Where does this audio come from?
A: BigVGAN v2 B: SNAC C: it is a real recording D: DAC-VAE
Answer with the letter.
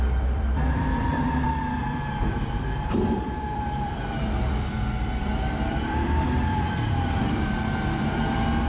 A